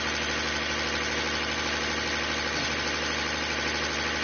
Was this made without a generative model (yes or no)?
yes